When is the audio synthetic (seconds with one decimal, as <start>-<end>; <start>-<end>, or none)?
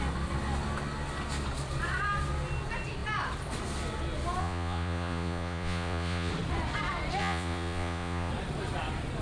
4.4-6.3; 7.2-8.3